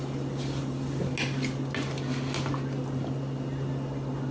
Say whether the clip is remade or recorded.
recorded